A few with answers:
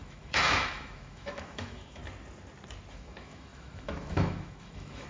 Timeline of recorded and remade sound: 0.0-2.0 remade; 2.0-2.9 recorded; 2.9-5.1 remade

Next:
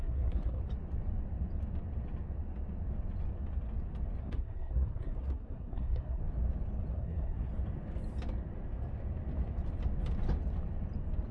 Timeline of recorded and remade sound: 0.0-0.6 remade; 0.6-4.2 recorded; 4.2-6.2 remade; 6.2-6.9 recorded; 6.9-7.5 remade; 7.5-11.3 recorded

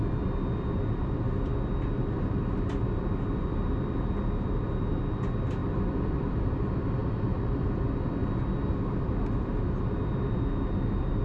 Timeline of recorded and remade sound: 0.0-5.6 recorded; 5.6-6.6 remade; 6.6-11.2 recorded

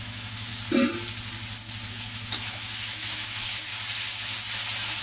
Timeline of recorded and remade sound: 0.0-0.5 remade; 0.5-1.9 recorded; 1.9-3.7 remade; 3.7-5.0 recorded

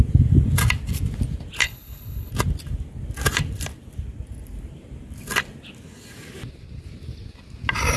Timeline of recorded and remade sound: 0.0-1.6 recorded; 1.6-2.3 remade; 2.3-8.0 recorded

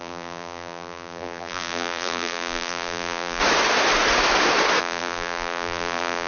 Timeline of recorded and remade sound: 0.0-3.4 remade; 3.4-4.8 recorded; 4.8-6.3 remade

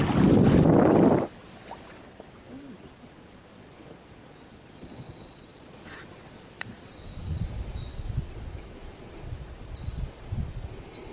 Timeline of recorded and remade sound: 0.0-2.8 recorded; 2.8-11.1 remade

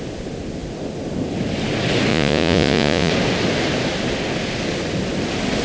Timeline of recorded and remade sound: 0.0-2.1 recorded; 2.1-3.1 remade; 3.1-5.6 recorded